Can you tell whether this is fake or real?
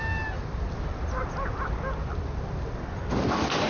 real